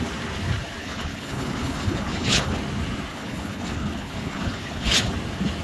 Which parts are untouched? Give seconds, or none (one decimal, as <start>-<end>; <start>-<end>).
0.0-0.8; 2.6-3.1; 5.1-5.6